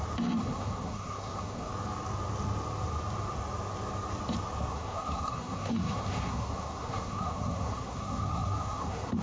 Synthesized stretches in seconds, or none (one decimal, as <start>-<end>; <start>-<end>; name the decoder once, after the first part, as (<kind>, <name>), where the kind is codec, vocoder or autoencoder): 0.4-1.7 (codec, SNAC); 4.7-9.2